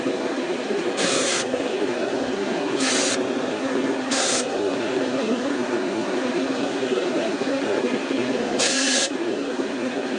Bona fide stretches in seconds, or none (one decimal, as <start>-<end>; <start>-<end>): 2.9-3.5